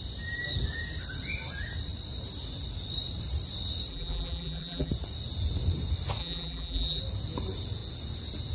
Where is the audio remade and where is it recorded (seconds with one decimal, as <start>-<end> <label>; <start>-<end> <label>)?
0.0-3.9 recorded; 3.9-4.9 remade; 4.9-6.2 recorded; 6.2-7.0 remade; 7.0-8.5 recorded